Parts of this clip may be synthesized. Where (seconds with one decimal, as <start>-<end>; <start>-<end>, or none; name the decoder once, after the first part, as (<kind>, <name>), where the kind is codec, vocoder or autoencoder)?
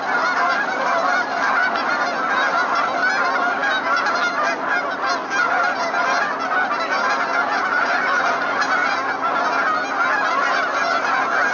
7.7-8.6 (vocoder, Vocos)